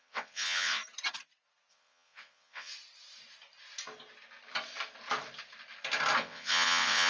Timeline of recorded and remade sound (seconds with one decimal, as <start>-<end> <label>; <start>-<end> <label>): 0.0-0.8 remade; 0.8-1.7 recorded; 1.7-2.7 remade; 2.7-6.2 recorded; 6.2-7.1 remade